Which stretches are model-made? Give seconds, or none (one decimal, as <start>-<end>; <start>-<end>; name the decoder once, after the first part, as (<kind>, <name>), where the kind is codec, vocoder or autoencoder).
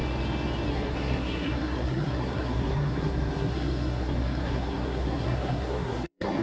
0.7-6.4 (codec, SNAC)